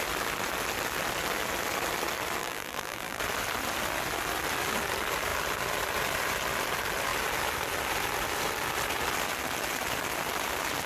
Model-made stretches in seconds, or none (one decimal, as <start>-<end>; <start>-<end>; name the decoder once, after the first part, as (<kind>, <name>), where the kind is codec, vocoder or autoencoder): 2.4-3.2 (vocoder, BigVGAN v2)